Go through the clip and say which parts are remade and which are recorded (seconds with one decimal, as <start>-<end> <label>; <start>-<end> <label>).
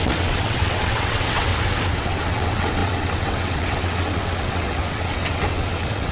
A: 0.0-1.5 remade; 1.5-2.0 recorded; 2.0-6.1 remade